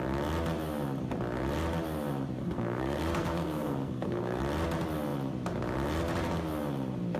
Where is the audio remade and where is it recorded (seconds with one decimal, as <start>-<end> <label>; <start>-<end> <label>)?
0.0-2.4 recorded; 2.4-4.4 remade; 4.4-7.2 recorded